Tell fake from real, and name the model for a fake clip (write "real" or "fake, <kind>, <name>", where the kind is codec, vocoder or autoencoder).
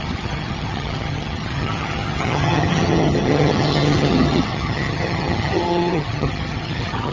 fake, vocoder, HiFi-GAN